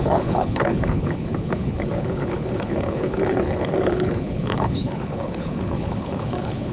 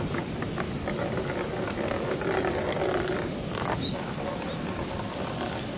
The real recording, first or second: second